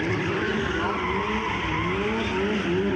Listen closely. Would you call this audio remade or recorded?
recorded